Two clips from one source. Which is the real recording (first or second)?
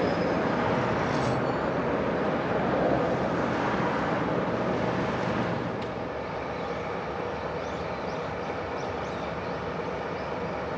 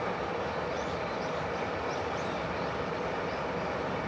first